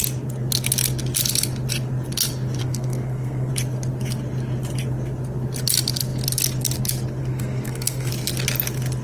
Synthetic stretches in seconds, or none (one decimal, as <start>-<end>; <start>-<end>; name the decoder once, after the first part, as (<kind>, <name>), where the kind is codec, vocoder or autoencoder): 2.6-3.5 (codec, SNAC); 7.2-8.1